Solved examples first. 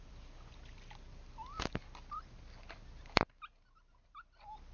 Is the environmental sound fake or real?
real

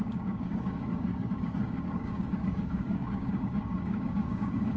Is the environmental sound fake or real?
fake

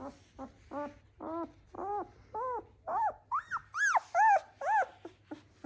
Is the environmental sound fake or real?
real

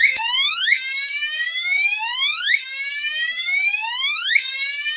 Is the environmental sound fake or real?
fake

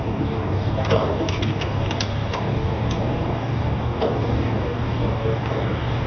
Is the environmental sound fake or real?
fake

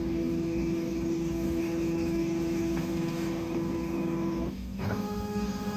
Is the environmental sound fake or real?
fake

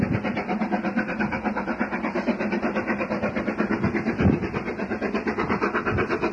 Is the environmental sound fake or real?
real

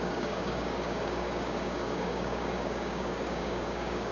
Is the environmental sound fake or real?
fake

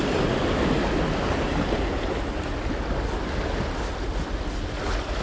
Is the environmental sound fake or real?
real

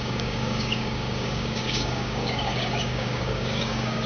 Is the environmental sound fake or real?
fake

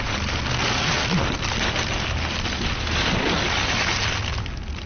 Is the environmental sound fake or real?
real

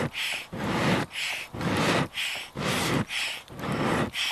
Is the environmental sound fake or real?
real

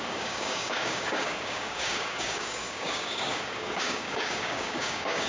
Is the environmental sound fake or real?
fake